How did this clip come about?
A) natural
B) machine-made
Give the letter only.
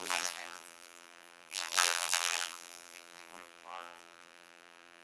B